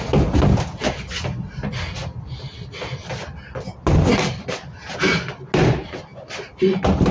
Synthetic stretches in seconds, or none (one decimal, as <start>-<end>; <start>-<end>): none